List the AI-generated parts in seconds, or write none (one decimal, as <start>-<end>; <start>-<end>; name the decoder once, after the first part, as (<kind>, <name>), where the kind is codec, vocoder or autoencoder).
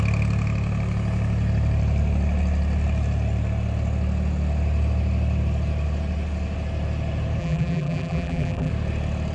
7.4-8.7 (vocoder, BigVGAN v2)